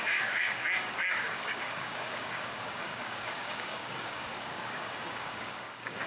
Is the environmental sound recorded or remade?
remade